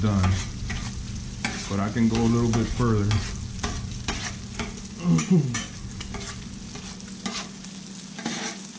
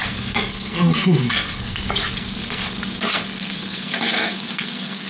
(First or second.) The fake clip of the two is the second